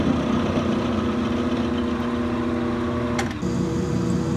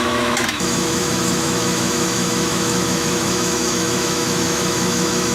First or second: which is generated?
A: second